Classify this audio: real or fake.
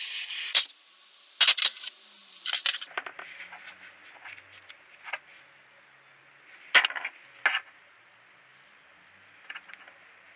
real